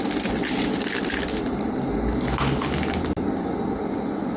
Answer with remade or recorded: recorded